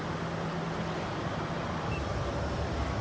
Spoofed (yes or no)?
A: no